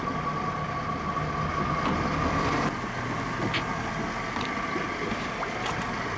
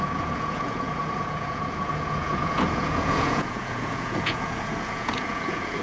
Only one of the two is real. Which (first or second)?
first